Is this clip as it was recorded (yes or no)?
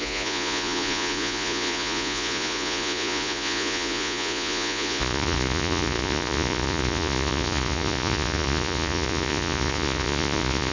no